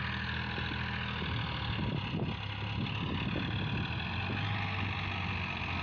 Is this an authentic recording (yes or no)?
yes